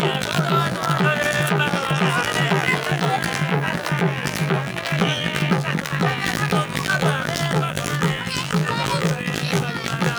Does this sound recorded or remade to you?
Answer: remade